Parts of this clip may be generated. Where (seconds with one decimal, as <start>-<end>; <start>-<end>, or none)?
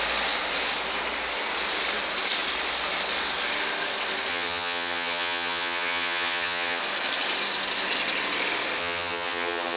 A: 4.3-6.8; 8.8-9.8